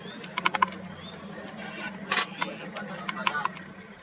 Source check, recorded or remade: recorded